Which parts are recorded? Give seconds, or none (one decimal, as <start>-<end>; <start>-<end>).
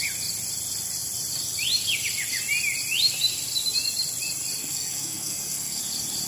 0.0-4.6; 5.8-6.3